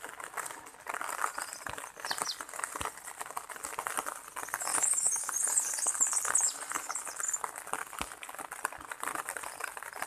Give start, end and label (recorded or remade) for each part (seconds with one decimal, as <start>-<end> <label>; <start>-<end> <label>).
0.0-4.7 recorded; 4.7-5.3 remade; 5.3-10.1 recorded